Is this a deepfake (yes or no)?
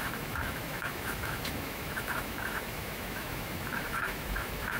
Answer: yes